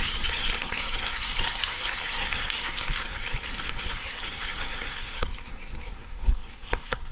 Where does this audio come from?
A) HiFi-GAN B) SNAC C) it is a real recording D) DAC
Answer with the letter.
B